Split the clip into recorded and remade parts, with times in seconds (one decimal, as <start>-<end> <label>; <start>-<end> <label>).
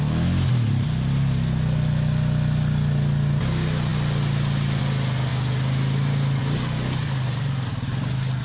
0.0-8.4 recorded